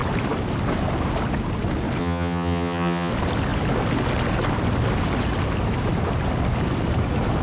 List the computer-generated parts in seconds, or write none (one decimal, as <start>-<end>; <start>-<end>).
2.0-3.1